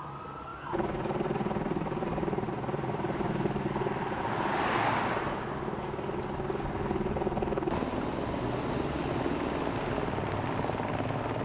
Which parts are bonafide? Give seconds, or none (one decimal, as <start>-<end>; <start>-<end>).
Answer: 0.0-0.5; 4.2-11.4